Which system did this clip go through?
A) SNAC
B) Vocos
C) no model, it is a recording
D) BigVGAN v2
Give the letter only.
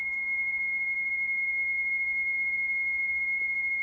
D